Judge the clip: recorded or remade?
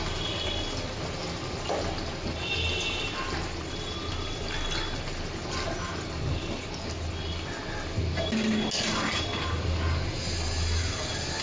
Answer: recorded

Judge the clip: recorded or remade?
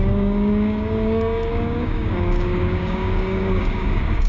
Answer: remade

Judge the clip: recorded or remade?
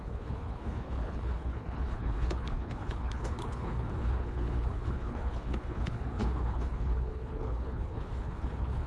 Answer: remade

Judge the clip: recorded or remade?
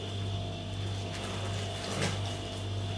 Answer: recorded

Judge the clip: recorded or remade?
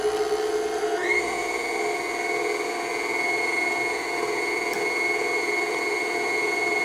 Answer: recorded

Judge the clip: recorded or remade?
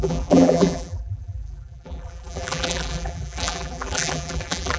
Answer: remade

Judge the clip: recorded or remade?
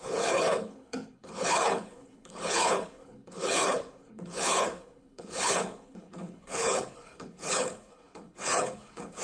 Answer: remade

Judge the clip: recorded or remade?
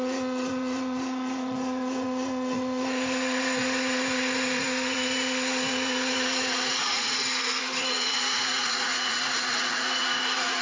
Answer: remade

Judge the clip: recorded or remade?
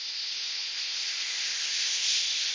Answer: remade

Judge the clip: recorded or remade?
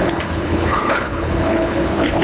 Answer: remade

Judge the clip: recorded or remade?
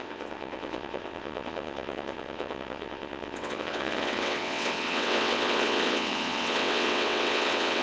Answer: remade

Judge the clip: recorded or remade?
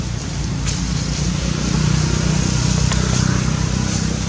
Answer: recorded